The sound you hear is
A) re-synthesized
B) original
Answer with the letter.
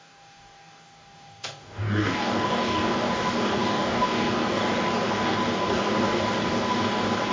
A